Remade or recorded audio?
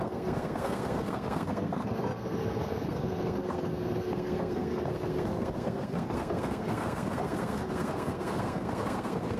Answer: remade